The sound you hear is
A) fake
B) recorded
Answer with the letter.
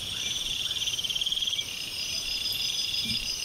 A